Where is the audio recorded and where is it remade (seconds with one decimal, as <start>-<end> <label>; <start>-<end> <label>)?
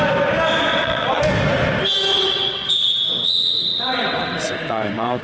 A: 0.0-0.7 recorded; 0.7-1.2 remade; 1.2-2.1 recorded; 2.1-5.2 remade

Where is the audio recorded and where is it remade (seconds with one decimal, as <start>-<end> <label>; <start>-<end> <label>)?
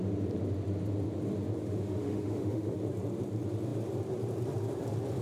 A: 0.0-1.6 recorded; 1.6-2.8 remade; 2.8-5.2 recorded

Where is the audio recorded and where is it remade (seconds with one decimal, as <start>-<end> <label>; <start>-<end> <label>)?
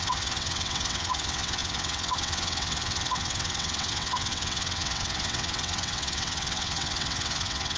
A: 0.0-7.8 remade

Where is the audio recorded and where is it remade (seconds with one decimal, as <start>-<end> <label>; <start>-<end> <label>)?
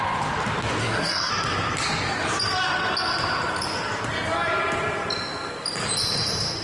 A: 0.0-0.8 recorded; 0.8-1.3 remade; 1.3-6.6 recorded